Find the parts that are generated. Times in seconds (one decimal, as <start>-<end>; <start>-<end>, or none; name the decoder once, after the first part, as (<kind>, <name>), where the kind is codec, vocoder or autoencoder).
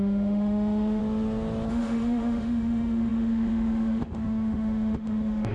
0.0-1.0 (autoencoder, DAC-VAE); 1.7-5.5